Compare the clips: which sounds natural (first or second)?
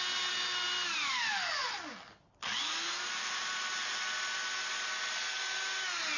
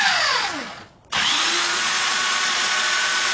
first